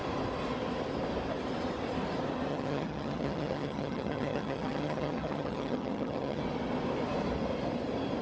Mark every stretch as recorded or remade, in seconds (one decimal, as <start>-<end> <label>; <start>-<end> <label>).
0.0-2.5 recorded; 2.5-6.4 remade; 6.4-8.2 recorded